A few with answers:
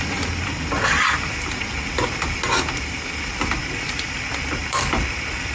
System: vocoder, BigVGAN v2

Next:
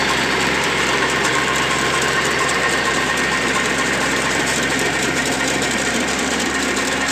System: vocoder, BigVGAN v2